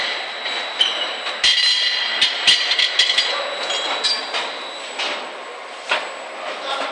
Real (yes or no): yes